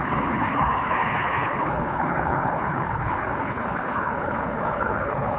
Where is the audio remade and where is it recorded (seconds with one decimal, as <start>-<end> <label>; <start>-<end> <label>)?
0.0-5.4 remade